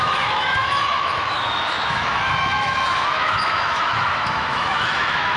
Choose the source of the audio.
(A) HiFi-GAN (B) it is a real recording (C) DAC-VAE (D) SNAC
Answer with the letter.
C